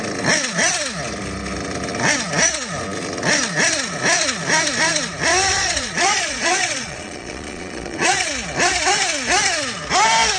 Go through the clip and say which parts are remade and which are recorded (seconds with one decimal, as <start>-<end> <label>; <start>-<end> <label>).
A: 0.0-5.5 recorded; 5.5-8.3 remade; 8.3-10.4 recorded